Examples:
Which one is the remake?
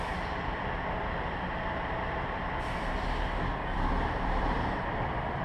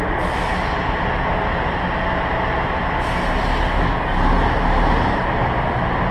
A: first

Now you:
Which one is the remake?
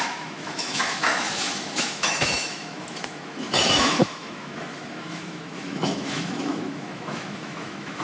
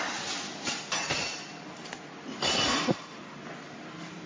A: first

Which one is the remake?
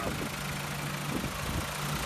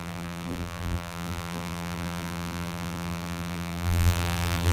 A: second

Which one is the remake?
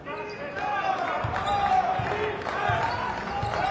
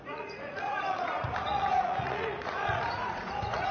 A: second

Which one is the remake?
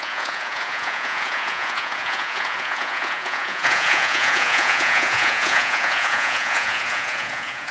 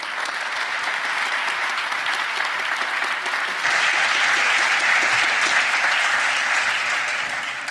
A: first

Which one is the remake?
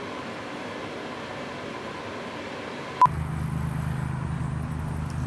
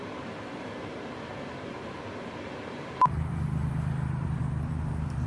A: second